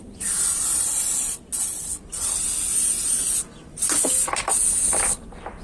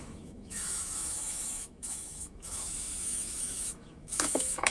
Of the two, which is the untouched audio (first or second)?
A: first